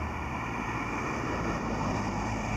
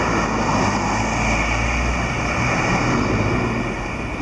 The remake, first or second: first